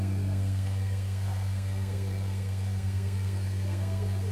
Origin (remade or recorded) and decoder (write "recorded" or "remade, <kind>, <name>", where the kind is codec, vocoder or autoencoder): remade, codec, SNAC